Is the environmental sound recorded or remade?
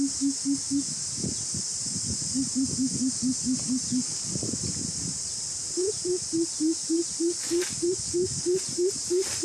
recorded